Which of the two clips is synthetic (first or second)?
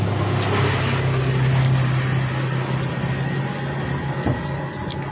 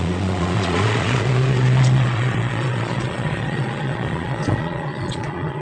second